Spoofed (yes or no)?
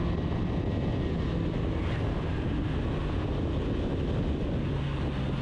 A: no